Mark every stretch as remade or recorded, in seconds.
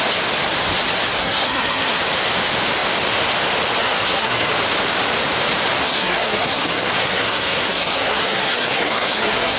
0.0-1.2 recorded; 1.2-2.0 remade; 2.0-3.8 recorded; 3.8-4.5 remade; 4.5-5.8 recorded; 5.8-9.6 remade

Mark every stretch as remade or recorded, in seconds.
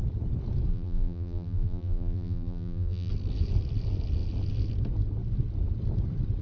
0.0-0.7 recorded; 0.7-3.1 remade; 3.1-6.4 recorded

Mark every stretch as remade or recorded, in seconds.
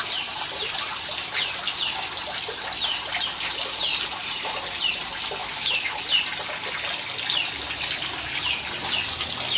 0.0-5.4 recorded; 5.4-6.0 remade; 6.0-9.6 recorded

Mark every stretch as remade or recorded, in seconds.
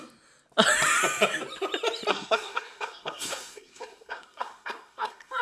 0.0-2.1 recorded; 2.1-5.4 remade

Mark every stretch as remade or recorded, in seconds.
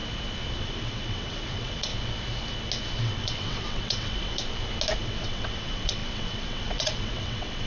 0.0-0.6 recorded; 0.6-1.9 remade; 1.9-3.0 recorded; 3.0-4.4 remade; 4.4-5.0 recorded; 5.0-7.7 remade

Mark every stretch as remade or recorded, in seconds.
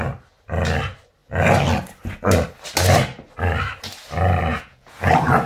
0.0-4.5 recorded; 4.5-5.1 remade; 5.1-5.5 recorded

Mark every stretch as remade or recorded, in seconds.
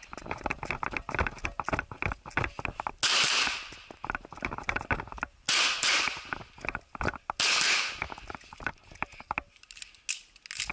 0.0-10.7 recorded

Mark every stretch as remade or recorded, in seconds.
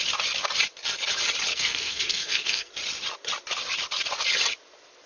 0.0-1.5 recorded; 1.5-2.7 remade; 2.7-5.1 recorded